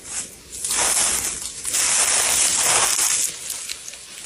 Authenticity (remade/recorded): recorded